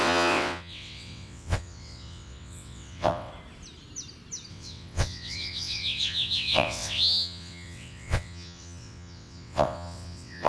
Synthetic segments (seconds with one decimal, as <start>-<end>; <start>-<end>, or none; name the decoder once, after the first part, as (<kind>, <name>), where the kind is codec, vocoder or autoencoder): 0.0-3.3 (vocoder, WaveNeXt); 4.5-10.5